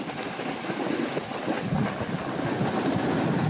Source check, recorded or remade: recorded